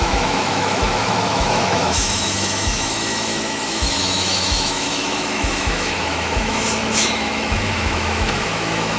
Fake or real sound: fake